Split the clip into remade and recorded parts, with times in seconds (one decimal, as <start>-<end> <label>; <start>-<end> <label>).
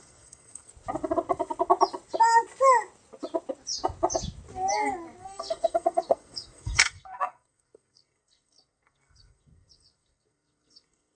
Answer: 0.0-0.7 remade; 0.7-5.2 recorded; 5.2-11.2 remade